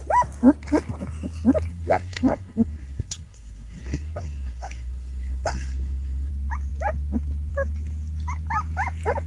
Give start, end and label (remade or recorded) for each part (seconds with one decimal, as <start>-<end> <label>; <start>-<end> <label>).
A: 0.0-1.7 recorded; 1.7-6.3 remade; 6.3-9.3 recorded